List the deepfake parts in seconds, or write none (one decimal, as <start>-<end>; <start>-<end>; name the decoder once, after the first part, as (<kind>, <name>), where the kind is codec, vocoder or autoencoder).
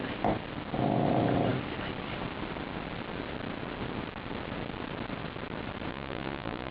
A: 5.9-6.7 (vocoder, Vocos)